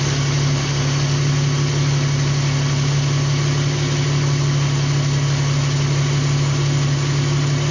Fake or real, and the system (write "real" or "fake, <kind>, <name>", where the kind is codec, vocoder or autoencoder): real